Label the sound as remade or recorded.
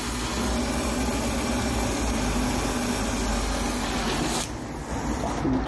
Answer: recorded